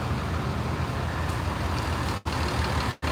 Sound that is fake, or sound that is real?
real